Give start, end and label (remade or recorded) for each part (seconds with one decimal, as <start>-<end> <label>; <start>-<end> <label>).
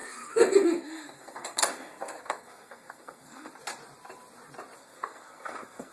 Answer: 0.0-3.5 remade; 3.5-4.8 recorded; 4.8-5.9 remade